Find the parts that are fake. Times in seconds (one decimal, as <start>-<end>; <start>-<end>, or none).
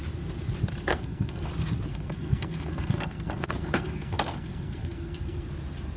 0.9-1.5; 1.9-5.5